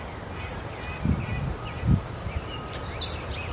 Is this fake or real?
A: real